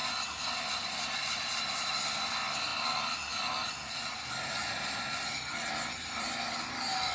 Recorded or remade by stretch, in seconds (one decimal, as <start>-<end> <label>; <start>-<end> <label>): 0.0-2.3 remade; 2.3-2.7 recorded; 2.7-7.1 remade